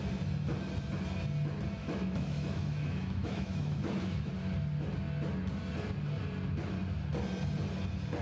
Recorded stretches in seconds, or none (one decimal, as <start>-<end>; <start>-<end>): 0.0-1.8; 4.3-8.2

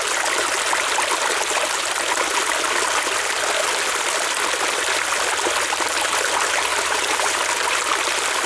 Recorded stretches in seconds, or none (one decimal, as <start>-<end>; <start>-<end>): 0.0-6.7; 7.4-8.5